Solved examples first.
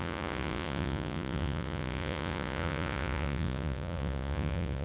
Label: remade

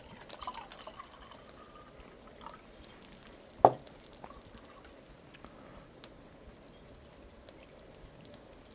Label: recorded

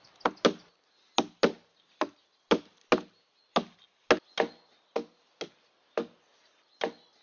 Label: recorded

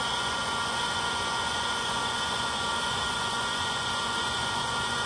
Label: remade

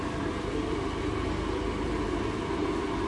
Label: recorded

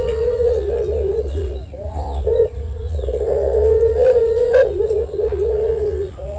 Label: remade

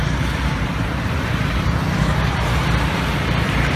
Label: remade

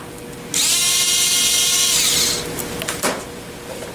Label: recorded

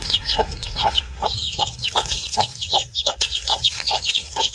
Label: remade